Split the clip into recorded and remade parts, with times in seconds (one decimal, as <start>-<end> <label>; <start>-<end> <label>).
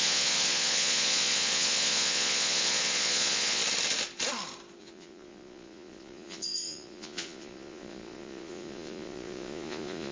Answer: 0.0-3.6 remade; 3.6-4.8 recorded; 4.8-10.1 remade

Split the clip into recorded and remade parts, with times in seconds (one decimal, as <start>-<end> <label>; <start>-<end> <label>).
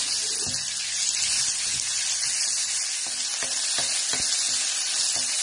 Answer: 0.0-5.4 recorded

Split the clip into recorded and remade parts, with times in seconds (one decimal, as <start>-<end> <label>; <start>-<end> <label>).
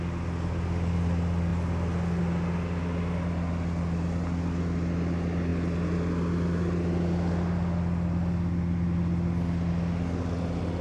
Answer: 0.0-10.8 recorded